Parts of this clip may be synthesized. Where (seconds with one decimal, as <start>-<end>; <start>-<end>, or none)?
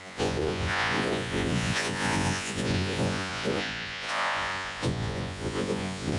0.0-6.2